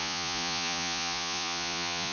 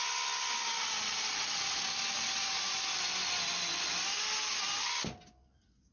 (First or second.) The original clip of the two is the second